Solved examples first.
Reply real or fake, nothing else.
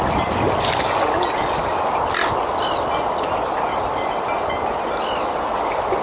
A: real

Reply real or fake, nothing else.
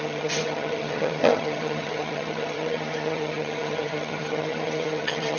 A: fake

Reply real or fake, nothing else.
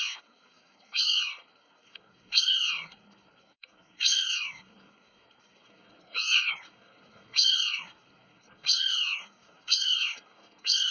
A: fake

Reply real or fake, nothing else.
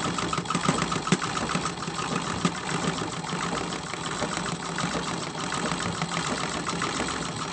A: real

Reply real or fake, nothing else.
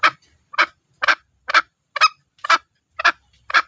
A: real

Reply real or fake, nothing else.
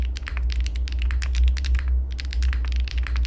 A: real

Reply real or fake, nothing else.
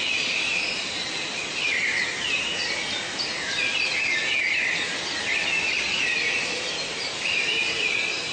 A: fake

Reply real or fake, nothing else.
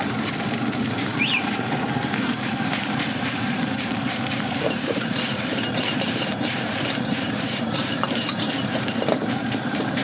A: fake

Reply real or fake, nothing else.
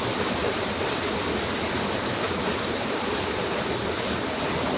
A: fake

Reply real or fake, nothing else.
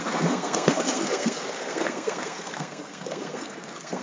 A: fake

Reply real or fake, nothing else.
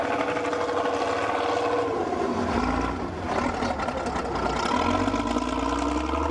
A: real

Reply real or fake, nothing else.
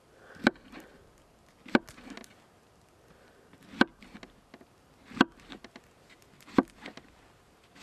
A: real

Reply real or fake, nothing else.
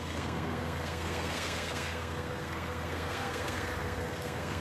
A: fake